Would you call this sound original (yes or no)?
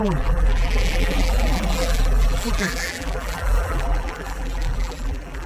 no